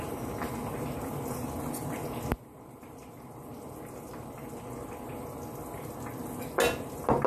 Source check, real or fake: real